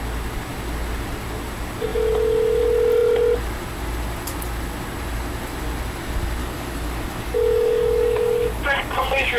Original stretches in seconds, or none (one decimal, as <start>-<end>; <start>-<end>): 0.0-6.4; 8.6-9.4